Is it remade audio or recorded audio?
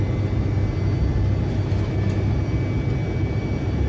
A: recorded